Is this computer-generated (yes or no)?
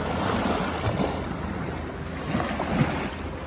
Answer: no